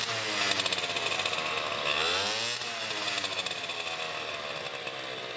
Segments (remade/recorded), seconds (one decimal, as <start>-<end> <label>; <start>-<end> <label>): 0.0-5.4 recorded